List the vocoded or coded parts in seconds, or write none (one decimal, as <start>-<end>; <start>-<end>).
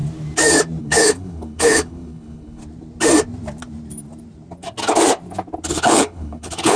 0.8-2.6; 5.7-6.8